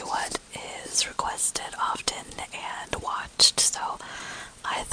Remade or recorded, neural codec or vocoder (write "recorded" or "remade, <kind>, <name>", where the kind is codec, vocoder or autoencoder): remade, vocoder, Vocos